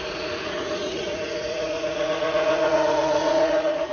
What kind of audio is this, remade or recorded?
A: remade